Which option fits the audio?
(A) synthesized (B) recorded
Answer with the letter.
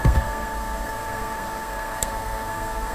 A